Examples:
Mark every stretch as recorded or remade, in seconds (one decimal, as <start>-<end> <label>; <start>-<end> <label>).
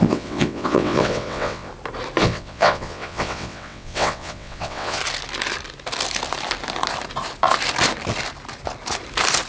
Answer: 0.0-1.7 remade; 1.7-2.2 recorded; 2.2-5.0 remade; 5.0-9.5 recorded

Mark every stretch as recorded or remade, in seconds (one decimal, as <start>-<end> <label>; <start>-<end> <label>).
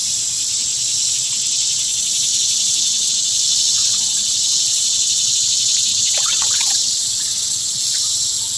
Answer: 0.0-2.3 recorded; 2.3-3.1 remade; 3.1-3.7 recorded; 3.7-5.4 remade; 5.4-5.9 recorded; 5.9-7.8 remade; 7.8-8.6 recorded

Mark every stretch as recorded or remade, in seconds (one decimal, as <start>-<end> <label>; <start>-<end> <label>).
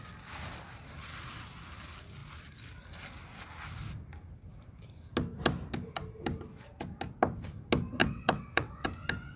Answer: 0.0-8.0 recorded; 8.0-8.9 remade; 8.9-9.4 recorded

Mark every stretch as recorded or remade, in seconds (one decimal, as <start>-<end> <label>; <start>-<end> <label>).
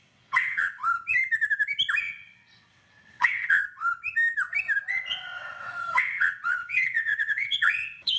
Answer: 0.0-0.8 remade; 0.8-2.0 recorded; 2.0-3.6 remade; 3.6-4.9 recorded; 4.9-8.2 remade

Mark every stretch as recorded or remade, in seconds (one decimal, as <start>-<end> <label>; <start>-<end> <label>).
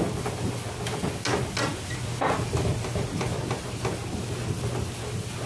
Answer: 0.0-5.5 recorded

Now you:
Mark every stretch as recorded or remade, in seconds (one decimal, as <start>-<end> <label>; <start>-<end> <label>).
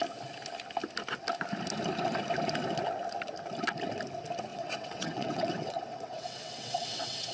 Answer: 0.0-4.5 recorded; 4.5-7.3 remade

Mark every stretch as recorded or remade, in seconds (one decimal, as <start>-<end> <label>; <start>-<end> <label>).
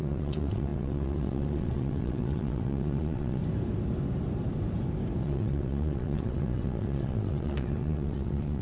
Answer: 0.0-3.4 remade; 3.4-5.2 recorded; 5.2-8.6 remade